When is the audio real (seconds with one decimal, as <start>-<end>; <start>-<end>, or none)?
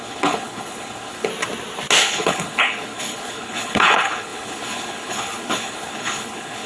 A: 1.3-2.0